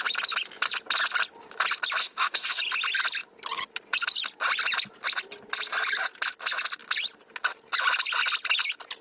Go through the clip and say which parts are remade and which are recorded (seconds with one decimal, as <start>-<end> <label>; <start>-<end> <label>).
0.0-2.0 recorded; 2.0-2.6 remade; 2.6-9.0 recorded